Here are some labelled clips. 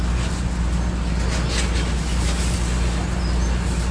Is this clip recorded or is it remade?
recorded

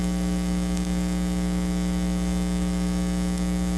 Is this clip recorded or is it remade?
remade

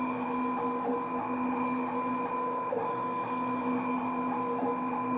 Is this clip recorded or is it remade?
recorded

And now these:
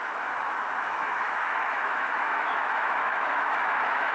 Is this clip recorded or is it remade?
remade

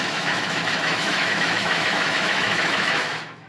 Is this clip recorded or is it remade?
remade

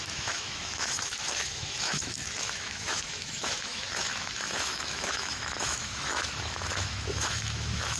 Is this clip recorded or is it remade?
remade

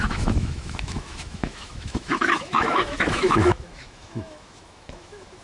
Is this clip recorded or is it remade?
remade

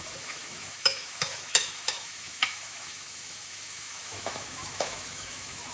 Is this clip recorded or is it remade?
remade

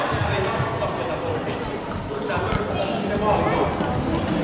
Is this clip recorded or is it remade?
recorded